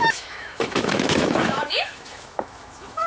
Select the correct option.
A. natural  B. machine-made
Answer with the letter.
B